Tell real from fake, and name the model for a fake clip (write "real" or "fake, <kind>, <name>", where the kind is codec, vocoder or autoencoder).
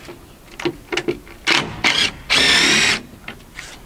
real